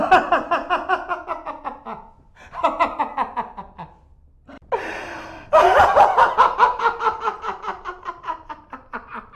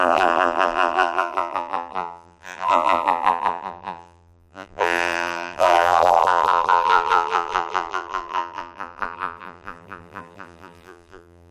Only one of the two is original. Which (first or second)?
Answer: first